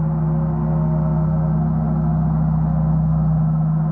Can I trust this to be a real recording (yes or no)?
yes